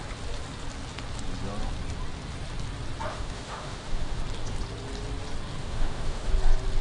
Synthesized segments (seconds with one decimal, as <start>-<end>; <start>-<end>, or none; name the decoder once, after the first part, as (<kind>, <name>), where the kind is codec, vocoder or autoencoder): 3.1-4.2 (autoencoder, DAC-VAE); 5.6-6.3